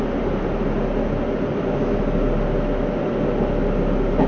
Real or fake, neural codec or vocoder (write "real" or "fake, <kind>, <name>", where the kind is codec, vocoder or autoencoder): real